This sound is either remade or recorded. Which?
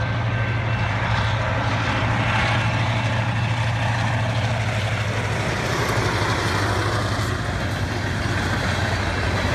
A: recorded